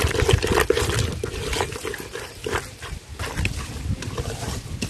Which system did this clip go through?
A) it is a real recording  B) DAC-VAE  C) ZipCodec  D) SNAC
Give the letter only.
A